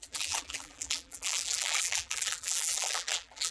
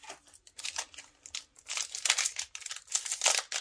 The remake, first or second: first